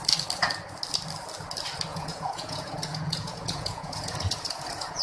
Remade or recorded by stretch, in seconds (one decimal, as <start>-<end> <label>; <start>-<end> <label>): 0.0-1.9 recorded; 1.9-5.0 remade